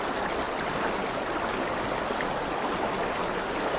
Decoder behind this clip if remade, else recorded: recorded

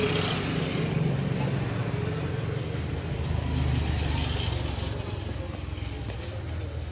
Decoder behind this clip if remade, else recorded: recorded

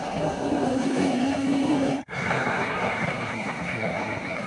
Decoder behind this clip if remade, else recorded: remade, codec, SNAC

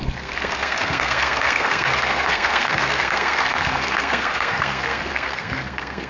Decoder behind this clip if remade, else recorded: remade, codec, SNAC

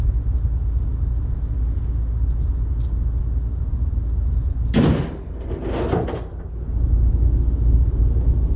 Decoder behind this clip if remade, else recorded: recorded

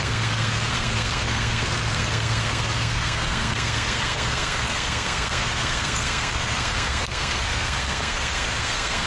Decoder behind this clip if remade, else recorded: remade, codec, SNAC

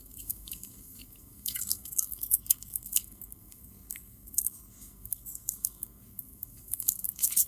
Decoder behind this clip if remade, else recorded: remade, codec, SNAC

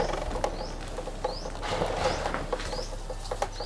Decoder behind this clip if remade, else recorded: recorded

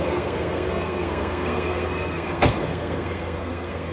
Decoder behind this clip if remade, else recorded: remade, codec, SNAC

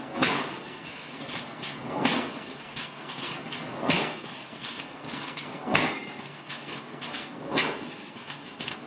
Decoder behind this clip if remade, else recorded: remade, codec, SNAC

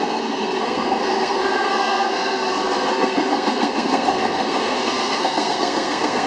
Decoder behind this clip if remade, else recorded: remade, codec, SNAC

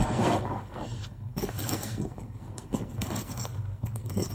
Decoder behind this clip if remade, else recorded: remade, codec, SNAC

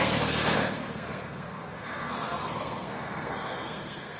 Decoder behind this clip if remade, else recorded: remade, codec, SNAC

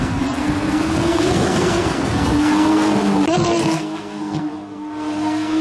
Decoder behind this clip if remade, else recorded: remade, codec, SNAC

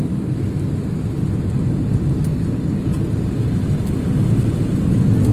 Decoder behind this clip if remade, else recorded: recorded